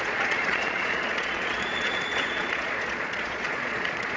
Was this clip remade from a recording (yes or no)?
yes